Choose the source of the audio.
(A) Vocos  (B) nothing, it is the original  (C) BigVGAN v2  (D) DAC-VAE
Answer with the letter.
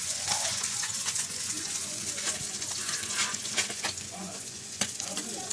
A